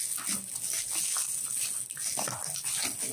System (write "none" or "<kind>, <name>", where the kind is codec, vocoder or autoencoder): none